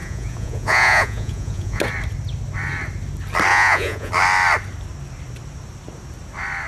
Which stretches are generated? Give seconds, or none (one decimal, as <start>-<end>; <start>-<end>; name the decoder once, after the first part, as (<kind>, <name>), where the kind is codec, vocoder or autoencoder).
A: 0.0-1.8 (vocoder, Vocos); 3.5-4.1